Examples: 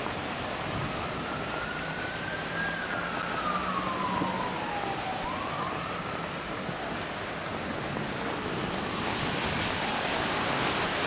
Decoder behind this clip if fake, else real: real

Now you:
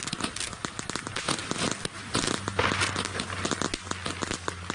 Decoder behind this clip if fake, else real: real